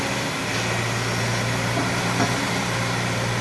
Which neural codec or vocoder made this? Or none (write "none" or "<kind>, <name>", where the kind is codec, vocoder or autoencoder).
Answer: none